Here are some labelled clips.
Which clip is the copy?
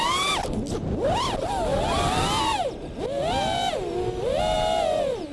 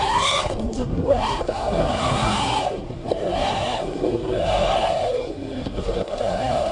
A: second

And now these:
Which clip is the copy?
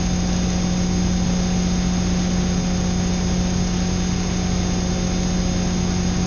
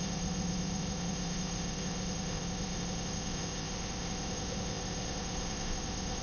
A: second